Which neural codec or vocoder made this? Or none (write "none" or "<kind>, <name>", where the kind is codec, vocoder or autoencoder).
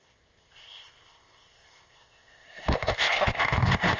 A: codec, ZipCodec